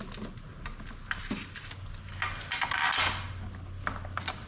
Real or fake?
real